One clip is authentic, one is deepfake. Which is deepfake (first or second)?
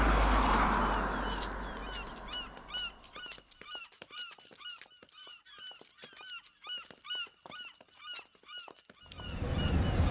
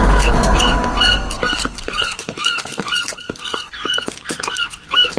second